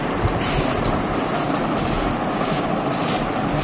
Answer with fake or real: real